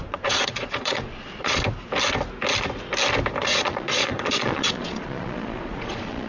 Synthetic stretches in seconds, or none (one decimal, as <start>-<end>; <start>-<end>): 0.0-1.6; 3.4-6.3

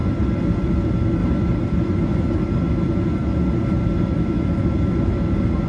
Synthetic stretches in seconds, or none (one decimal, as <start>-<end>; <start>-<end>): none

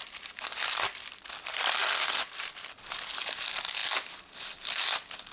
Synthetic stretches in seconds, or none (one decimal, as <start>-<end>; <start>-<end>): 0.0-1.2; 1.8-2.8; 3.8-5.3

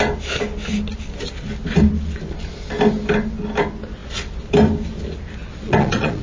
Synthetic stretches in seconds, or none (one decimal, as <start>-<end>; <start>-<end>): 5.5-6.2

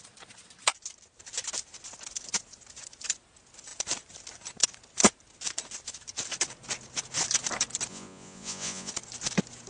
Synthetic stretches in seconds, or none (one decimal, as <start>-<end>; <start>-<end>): 7.9-8.9

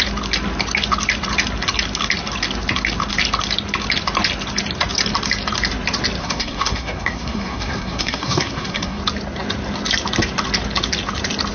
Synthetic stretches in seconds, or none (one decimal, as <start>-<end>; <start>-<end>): 6.2-9.0

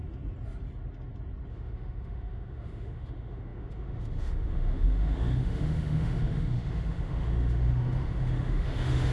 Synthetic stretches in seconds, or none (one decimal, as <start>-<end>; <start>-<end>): 1.5-9.1

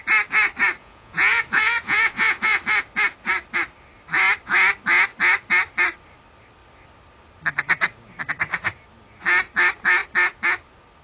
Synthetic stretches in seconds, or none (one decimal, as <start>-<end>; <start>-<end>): 0.8-2.6